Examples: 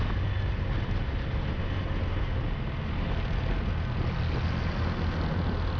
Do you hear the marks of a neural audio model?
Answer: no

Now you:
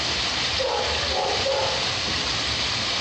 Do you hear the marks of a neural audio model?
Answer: no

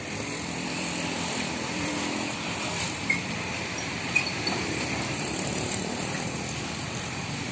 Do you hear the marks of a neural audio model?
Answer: yes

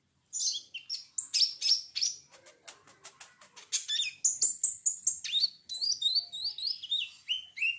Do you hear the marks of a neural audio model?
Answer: no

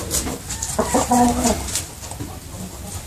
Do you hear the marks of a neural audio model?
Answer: no